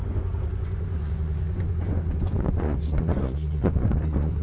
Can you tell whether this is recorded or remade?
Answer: remade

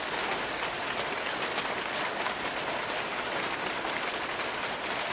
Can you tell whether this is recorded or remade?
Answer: recorded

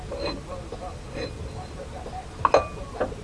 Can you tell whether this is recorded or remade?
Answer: recorded